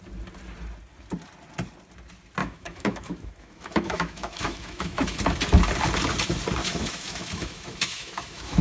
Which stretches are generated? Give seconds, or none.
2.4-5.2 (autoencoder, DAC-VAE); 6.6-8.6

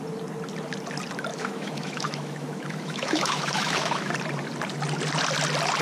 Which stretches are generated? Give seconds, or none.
1.3-4.1 (autoencoder, DAC-VAE)

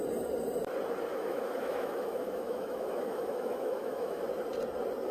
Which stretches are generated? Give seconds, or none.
1.1-4.2 (autoencoder, DAC-VAE)